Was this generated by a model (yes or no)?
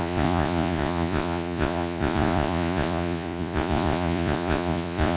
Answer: yes